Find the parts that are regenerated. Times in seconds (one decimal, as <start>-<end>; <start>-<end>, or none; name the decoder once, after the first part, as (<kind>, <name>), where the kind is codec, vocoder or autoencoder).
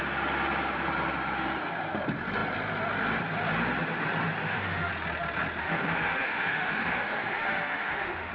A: 4.4-4.9 (autoencoder, DAC-VAE); 5.6-8.3